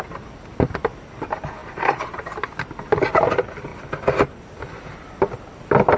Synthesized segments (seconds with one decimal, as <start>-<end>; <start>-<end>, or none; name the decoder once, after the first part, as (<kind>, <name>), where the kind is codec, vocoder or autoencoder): none